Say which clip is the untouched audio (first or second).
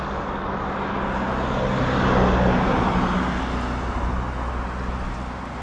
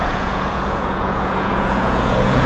first